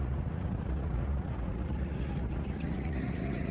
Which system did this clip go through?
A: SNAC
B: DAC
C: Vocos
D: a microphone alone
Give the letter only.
C